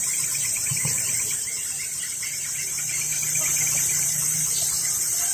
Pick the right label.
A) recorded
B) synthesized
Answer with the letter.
B